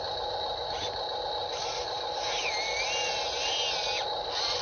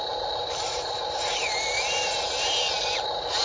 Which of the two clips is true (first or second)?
first